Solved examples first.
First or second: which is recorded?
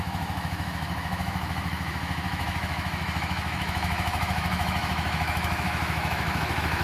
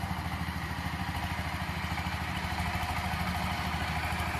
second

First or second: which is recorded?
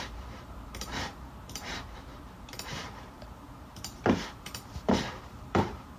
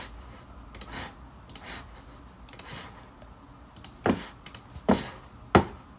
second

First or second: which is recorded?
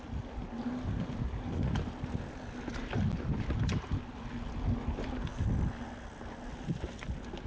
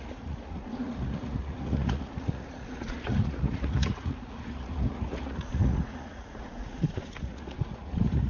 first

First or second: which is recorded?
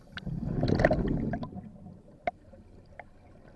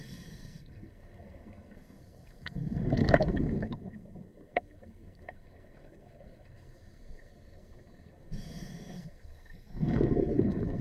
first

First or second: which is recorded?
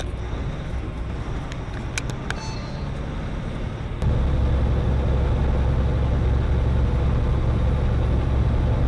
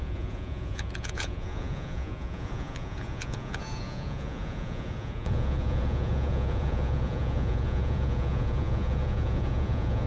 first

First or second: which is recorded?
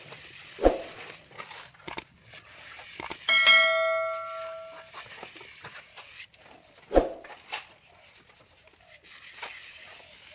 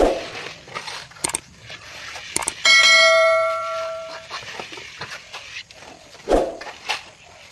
first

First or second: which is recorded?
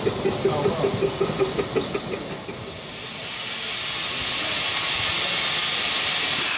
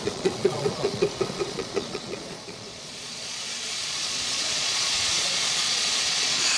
first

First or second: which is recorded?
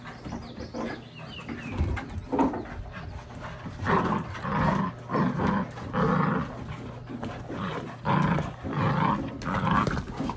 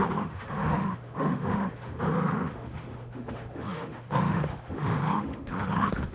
first